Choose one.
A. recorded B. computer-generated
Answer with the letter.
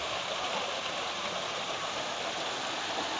A